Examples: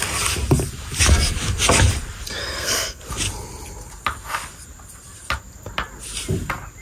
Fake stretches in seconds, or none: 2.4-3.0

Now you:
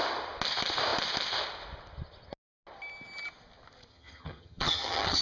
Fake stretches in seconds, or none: 3.9-5.2

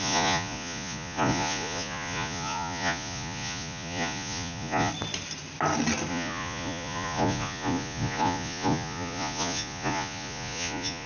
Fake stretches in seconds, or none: 0.0-4.9; 6.1-11.1

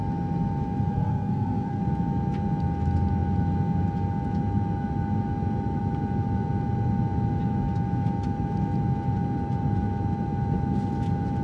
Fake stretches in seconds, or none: 0.9-1.8

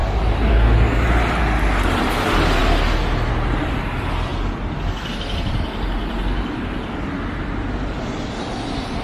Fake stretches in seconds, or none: 0.0-0.5

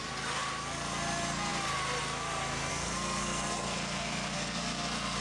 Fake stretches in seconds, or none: 2.7-5.2

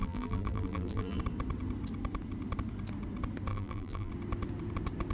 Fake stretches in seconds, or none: 0.0-1.2; 3.5-4.1